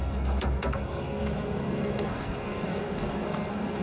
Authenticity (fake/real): fake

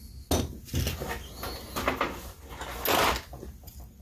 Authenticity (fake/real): real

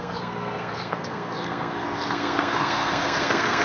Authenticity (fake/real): fake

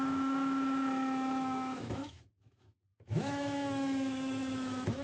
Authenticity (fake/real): fake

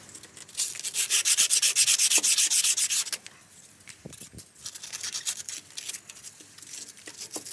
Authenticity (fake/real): real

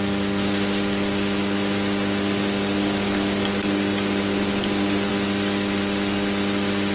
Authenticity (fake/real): real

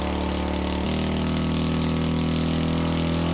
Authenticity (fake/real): real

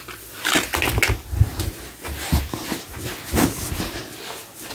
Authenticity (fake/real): real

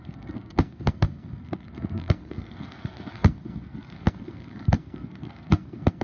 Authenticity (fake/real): fake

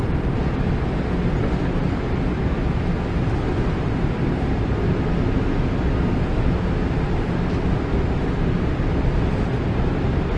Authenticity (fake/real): real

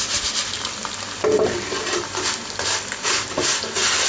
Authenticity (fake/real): real